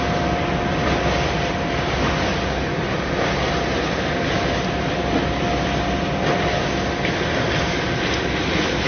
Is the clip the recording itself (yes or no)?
yes